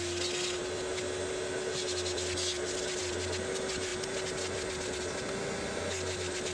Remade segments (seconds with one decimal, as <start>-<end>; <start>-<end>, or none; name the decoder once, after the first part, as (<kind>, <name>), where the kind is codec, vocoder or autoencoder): none